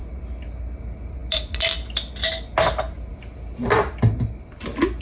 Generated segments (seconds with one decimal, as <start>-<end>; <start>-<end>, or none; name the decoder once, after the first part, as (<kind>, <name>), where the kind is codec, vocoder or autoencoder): none